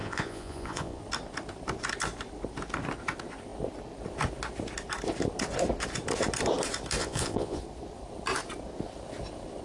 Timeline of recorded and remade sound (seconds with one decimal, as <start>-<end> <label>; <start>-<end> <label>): 0.0-1.0 remade; 1.0-7.0 recorded; 7.0-7.6 remade; 7.6-9.6 recorded